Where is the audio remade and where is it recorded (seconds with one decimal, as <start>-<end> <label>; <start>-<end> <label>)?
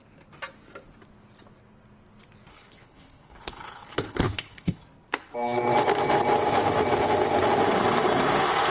0.0-2.5 recorded; 2.5-4.8 remade; 4.8-8.7 recorded